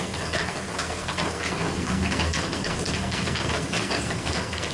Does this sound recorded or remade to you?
remade